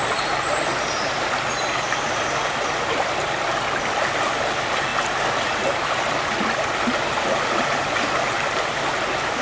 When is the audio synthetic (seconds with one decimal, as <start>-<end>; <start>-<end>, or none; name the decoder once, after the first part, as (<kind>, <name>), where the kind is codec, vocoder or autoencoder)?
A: none